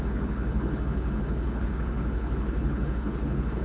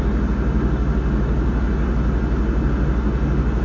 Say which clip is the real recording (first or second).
second